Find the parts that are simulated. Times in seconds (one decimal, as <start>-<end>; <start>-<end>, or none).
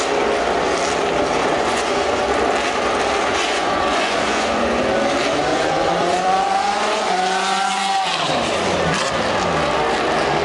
1.4-2.2; 3.3-4.8; 5.5-7.1